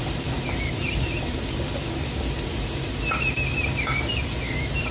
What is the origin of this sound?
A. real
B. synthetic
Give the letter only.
A